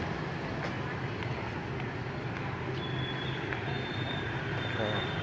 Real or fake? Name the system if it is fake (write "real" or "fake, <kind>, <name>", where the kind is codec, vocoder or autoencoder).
real